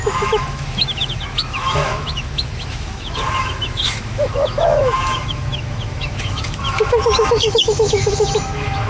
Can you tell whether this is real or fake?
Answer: fake